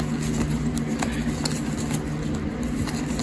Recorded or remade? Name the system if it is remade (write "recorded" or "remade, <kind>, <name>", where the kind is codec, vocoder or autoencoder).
recorded